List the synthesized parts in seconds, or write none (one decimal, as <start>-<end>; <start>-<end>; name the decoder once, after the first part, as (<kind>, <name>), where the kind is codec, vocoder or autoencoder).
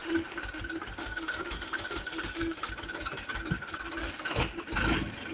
0.0-0.6 (autoencoder, DAC-VAE); 1.0-2.7; 4.0-4.6